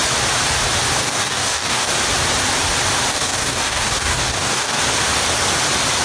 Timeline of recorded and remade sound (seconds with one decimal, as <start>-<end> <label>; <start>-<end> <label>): 0.0-1.0 recorded; 1.0-1.9 remade; 1.9-3.1 recorded; 3.1-4.8 remade; 4.8-6.0 recorded

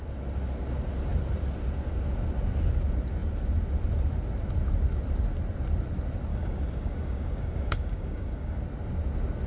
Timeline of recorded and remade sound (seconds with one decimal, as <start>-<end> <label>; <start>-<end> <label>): 0.0-6.3 recorded; 6.3-8.6 remade; 8.6-9.5 recorded